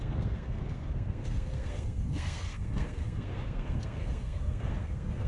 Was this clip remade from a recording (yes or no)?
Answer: yes